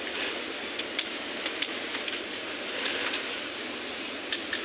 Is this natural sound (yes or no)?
no